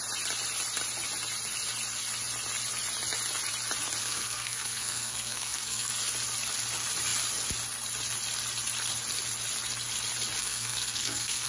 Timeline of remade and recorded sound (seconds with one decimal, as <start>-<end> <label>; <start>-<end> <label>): 0.0-4.0 recorded; 4.0-5.9 remade; 5.9-10.4 recorded; 10.4-11.5 remade